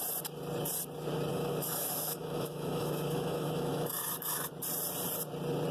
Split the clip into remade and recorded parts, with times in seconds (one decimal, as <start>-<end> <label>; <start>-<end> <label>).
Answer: 0.0-1.3 recorded; 1.3-4.5 remade; 4.5-5.7 recorded